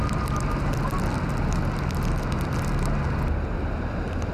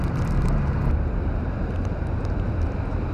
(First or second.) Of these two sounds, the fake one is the second